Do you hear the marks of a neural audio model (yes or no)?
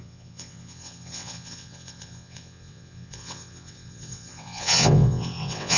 yes